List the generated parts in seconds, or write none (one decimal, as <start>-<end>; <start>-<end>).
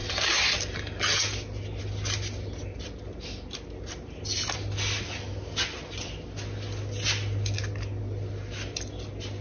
none